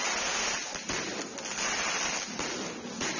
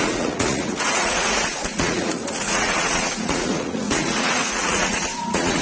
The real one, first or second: first